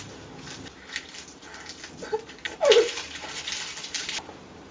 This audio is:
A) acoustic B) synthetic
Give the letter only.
A